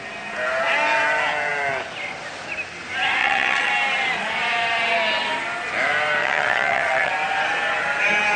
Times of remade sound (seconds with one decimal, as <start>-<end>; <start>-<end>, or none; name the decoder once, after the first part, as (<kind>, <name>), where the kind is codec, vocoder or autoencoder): 3.2-3.7 (vocoder, WaveNeXt); 6.2-7.1